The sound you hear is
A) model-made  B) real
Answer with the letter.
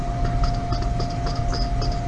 B